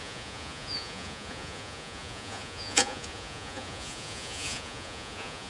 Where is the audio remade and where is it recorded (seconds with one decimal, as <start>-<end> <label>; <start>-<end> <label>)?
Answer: 0.0-5.5 remade